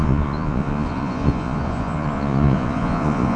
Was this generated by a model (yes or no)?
yes